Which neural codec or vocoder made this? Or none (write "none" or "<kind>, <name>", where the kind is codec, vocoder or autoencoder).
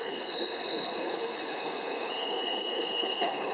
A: codec, HILCodec